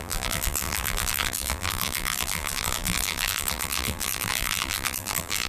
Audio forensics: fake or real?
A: fake